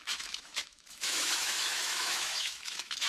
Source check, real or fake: fake